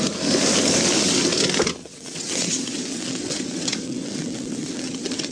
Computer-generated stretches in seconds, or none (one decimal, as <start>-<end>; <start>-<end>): 1.8-5.3